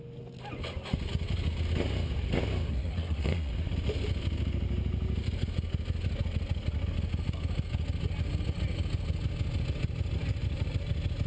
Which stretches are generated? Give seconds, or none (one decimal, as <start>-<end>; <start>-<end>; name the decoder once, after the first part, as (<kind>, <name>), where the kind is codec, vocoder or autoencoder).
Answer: 2.7-3.5 (codec, SNAC)